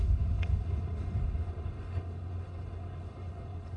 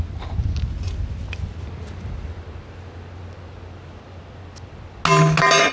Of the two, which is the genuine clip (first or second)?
second